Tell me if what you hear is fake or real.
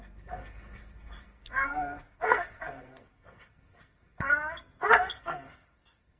fake